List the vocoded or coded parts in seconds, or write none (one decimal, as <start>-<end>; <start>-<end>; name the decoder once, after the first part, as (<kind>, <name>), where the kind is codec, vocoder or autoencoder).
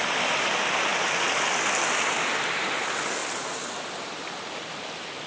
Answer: none